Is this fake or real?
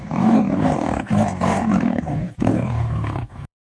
fake